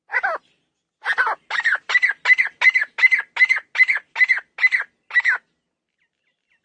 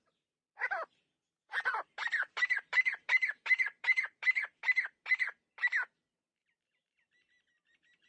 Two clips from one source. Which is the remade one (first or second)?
second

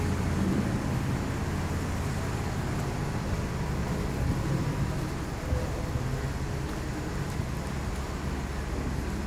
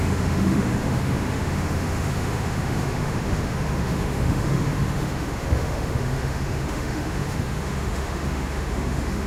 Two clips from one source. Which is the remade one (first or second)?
second